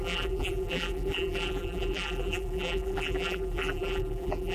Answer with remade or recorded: remade